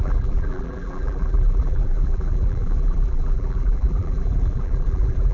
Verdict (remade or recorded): remade